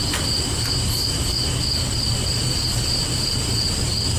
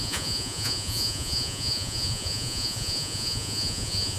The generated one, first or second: second